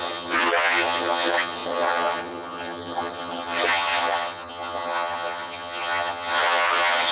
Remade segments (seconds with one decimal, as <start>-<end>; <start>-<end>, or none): 0.0-7.1

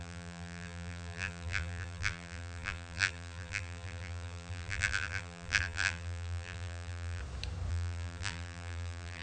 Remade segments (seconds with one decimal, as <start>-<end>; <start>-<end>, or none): 0.0-7.2; 7.7-9.2

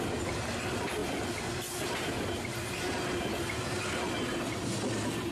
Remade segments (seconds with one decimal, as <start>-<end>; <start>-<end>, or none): none

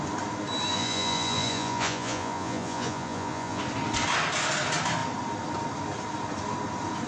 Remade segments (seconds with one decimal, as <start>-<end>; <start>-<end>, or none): 0.7-3.6

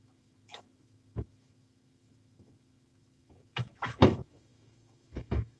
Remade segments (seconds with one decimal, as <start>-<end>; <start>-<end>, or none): 0.0-5.6

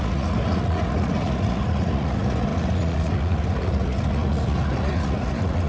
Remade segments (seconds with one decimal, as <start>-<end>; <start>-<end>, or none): 0.0-5.7

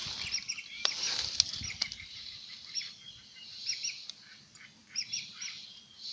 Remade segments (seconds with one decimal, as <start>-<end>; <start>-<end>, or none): 4.8-5.5

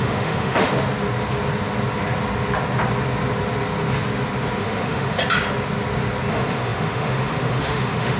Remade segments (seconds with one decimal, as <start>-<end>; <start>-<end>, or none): 0.0-0.7; 4.6-5.2; 6.3-8.2